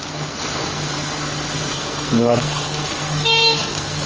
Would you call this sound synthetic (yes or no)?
yes